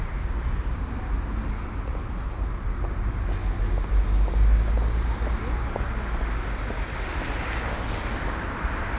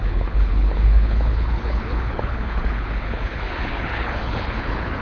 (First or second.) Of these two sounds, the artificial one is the second